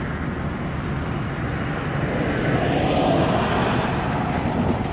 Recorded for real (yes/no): yes